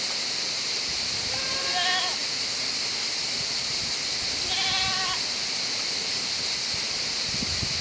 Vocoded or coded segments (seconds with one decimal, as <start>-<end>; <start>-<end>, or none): none